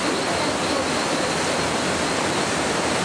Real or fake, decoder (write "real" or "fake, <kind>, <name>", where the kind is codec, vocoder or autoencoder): real